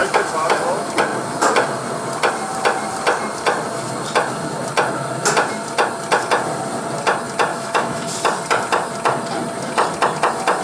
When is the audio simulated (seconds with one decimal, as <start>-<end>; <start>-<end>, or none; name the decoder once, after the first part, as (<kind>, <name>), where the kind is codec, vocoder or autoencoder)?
0.0-0.6 (autoencoder, DAC-VAE); 7.5-8.1